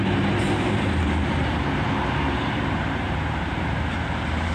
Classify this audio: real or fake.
fake